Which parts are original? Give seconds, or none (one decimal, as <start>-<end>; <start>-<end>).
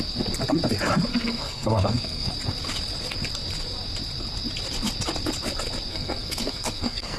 0.0-1.1; 2.3-5.9